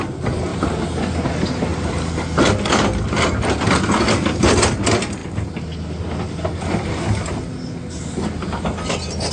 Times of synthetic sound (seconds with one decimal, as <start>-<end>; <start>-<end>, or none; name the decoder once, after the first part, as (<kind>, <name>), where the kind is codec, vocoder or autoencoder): none